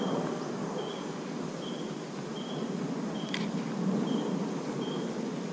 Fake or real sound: real